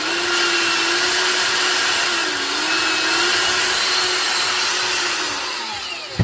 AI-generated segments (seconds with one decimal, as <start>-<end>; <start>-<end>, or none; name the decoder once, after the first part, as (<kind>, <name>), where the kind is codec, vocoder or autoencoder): none